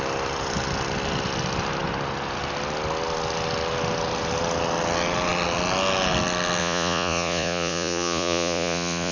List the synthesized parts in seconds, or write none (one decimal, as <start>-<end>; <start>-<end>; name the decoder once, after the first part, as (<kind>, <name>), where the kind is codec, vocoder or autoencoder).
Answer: 6.6-9.1 (vocoder, Vocos)